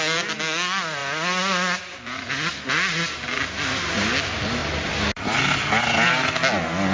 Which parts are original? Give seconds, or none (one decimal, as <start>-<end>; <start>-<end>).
0.0-6.9